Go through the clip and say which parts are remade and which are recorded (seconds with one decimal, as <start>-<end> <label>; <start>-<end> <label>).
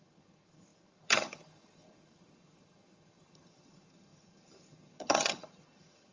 0.0-6.1 remade